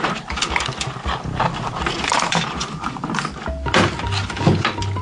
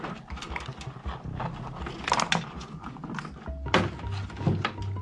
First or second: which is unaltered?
second